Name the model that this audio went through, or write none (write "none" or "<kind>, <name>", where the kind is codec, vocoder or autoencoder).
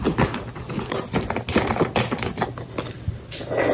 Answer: none